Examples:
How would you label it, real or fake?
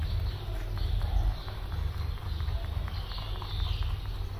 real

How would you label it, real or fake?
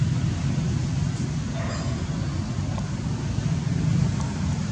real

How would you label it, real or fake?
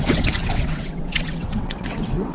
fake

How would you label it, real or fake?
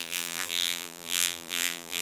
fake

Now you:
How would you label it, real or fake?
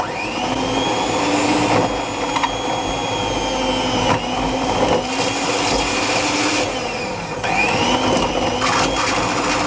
real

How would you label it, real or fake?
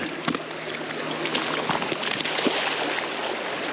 real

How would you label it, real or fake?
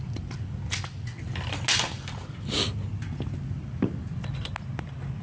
real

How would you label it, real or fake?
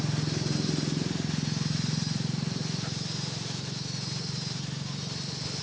real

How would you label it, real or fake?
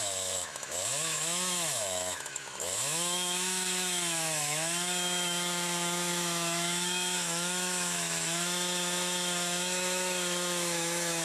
fake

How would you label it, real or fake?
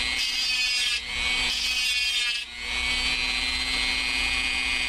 real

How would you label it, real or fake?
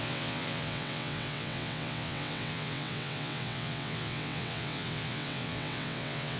fake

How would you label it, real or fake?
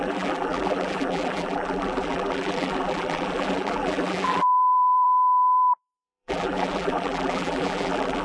fake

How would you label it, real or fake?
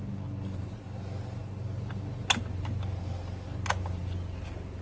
real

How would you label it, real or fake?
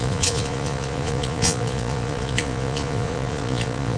fake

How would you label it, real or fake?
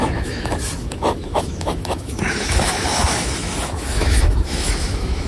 fake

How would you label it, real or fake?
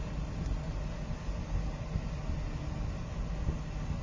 real